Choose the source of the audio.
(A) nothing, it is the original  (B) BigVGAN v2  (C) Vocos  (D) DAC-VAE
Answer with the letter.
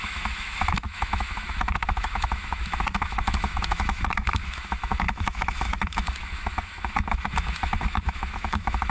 D